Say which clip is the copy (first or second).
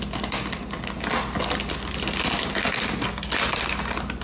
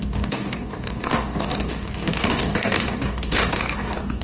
second